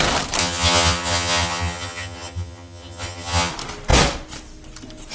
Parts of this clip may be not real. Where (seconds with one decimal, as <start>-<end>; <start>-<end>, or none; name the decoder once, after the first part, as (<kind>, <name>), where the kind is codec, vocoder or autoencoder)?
0.4-3.5 (vocoder, HiFi-GAN)